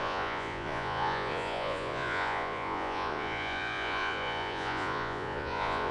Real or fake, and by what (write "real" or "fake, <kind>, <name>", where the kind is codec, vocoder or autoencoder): fake, vocoder, Vocos